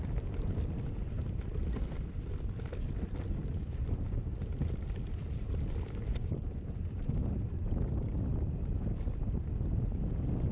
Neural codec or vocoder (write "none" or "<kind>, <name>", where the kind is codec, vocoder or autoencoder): none